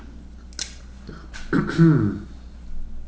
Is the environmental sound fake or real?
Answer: real